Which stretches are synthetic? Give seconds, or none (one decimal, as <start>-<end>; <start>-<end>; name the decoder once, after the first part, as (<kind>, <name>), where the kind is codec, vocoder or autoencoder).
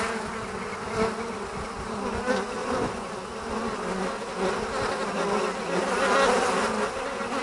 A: 2.6-3.1 (vocoder, Vocos)